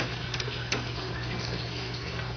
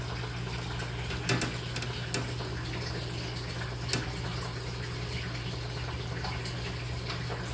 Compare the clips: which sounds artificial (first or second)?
first